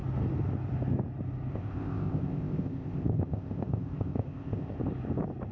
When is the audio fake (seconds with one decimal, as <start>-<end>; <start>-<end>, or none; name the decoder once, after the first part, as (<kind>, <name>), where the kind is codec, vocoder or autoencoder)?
1.5-4.8 (codec, ZipCodec)